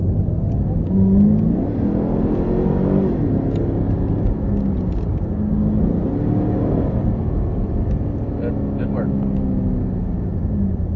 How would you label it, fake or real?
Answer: real